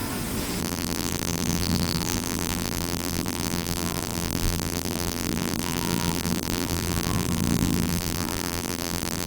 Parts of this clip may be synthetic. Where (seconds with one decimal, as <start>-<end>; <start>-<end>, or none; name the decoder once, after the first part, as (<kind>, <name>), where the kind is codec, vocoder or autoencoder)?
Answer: 0.6-9.3 (vocoder, BigVGAN v2)